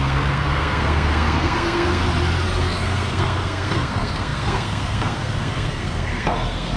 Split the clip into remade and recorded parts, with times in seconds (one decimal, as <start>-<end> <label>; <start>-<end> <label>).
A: 0.0-2.0 remade; 2.0-2.6 recorded; 2.6-6.8 remade